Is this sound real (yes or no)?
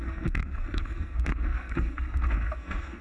no